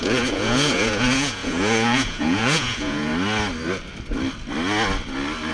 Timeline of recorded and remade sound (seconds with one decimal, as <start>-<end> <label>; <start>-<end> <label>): 0.0-3.1 remade; 3.1-5.5 recorded